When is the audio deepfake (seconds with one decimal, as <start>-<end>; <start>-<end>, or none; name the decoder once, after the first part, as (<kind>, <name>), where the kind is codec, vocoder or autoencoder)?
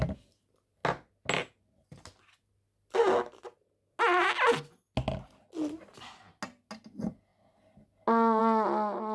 none